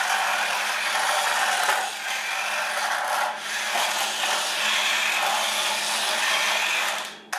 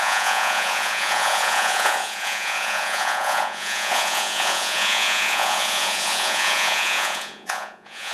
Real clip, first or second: first